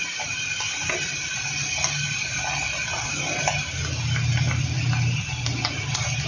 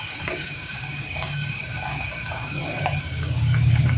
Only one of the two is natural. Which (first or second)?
first